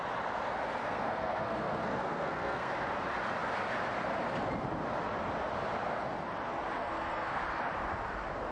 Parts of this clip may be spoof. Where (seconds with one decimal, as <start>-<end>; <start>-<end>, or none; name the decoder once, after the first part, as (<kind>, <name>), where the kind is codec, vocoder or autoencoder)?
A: 0.8-2.7 (codec, SNAC); 6.8-7.4

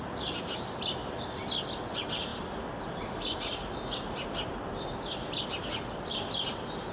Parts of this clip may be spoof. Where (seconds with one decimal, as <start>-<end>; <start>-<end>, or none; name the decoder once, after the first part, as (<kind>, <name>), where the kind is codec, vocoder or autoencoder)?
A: none

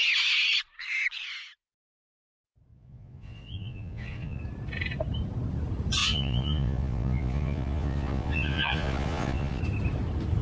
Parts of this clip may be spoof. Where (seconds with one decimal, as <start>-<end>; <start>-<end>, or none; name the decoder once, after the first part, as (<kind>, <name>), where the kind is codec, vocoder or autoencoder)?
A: 2.7-4.4 (vocoder, Vocos); 6.0-9.6

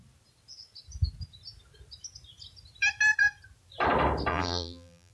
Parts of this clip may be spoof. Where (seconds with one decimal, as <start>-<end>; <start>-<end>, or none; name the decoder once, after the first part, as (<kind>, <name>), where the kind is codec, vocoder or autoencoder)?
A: 4.3-5.1 (vocoder, BigVGAN v2)